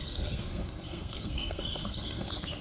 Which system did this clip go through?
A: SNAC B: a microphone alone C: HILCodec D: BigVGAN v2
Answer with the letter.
A